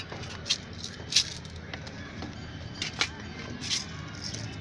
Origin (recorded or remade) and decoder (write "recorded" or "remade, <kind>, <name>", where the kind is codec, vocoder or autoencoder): recorded